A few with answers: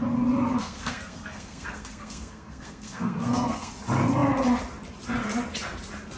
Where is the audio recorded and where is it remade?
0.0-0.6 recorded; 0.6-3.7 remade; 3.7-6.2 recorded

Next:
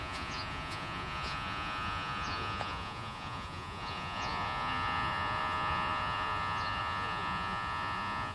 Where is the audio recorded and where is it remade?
0.0-8.3 remade

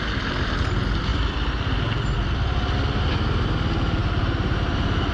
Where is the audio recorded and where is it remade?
0.0-5.1 recorded

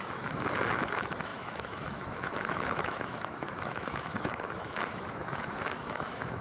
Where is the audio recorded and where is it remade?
0.0-6.4 remade